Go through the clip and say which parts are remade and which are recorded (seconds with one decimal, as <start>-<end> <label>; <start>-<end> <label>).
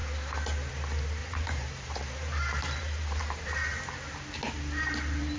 0.0-1.2 recorded; 1.2-3.2 remade; 3.2-5.4 recorded